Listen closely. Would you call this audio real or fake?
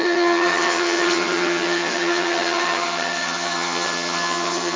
fake